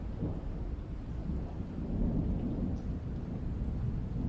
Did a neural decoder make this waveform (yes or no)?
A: no